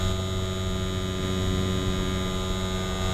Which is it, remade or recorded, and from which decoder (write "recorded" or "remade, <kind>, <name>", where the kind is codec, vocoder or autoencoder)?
recorded